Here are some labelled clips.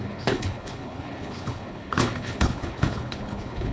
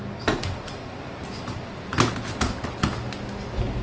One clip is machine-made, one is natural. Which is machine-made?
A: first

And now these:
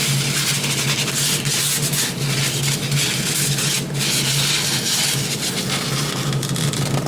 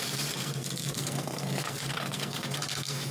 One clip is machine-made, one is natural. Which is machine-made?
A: second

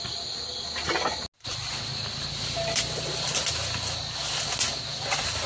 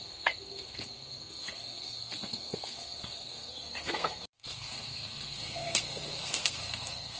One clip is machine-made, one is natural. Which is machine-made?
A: second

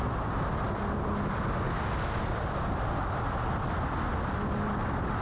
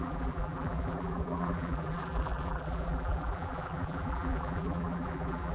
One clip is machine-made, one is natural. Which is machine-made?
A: second